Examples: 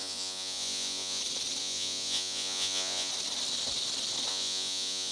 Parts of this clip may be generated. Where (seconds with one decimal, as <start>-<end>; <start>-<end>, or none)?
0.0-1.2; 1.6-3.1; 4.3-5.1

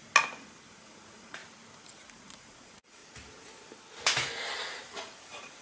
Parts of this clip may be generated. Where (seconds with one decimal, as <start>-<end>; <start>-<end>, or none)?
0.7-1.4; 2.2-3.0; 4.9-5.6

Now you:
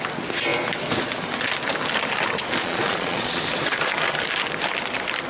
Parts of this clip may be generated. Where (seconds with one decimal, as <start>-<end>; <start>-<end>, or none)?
2.6-3.4